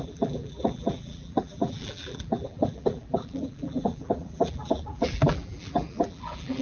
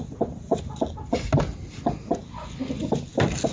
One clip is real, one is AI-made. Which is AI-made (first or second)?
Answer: first